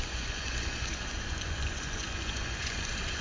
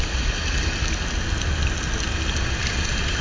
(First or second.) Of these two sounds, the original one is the second